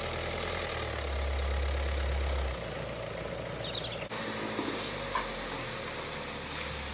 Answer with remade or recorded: recorded